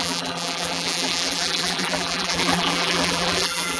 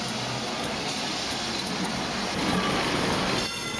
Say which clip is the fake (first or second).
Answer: first